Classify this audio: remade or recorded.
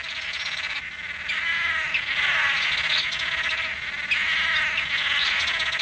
recorded